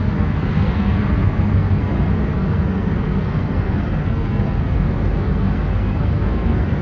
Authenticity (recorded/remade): remade